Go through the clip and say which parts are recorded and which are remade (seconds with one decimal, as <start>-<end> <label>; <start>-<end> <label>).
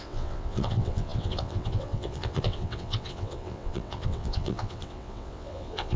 0.0-6.0 remade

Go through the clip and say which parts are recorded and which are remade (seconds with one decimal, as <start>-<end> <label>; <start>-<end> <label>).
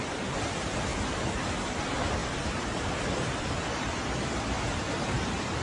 0.0-5.6 recorded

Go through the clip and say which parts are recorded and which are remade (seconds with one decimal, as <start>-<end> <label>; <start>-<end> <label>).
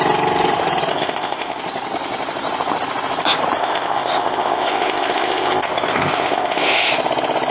0.0-0.9 recorded; 0.9-1.6 remade; 1.6-3.6 recorded; 3.6-6.9 remade; 6.9-7.5 recorded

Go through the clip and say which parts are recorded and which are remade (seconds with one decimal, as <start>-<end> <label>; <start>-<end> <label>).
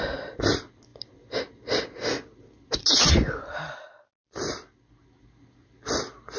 0.0-6.4 recorded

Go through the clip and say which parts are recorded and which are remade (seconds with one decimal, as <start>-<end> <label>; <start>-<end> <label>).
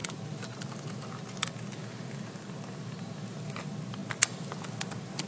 0.0-5.3 recorded